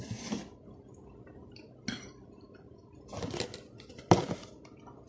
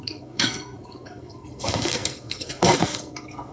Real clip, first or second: first